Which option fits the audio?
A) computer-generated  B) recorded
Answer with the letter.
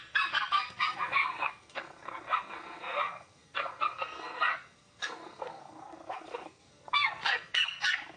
A